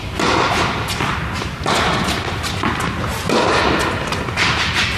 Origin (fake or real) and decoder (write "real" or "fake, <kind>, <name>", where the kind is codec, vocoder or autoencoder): real